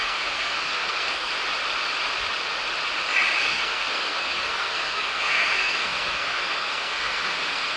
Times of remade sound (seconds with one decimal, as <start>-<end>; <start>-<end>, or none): 0.0-1.3; 3.4-7.8